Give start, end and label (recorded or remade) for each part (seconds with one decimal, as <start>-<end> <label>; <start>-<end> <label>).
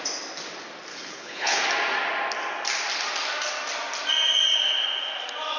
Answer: 0.0-0.9 recorded; 0.9-1.6 remade; 1.6-5.6 recorded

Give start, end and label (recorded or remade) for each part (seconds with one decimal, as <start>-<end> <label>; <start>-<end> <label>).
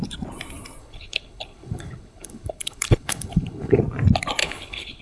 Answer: 0.0-0.8 recorded; 0.8-3.8 remade; 3.8-4.4 recorded; 4.4-5.0 remade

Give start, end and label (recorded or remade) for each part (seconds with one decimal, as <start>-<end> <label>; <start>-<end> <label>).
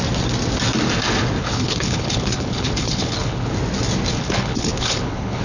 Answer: 0.0-1.4 recorded; 1.4-3.5 remade; 3.5-4.1 recorded; 4.1-5.4 remade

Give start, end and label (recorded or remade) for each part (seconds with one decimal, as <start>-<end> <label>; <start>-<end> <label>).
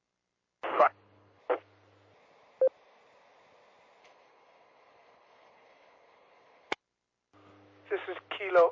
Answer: 0.0-0.7 recorded; 0.7-1.4 remade; 1.4-4.0 recorded; 4.0-6.8 remade; 6.8-8.7 recorded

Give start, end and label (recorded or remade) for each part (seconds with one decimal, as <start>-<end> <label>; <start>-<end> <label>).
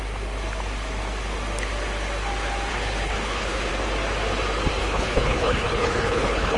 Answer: 0.0-2.7 recorded; 2.7-3.7 remade; 3.7-4.8 recorded; 4.8-6.6 remade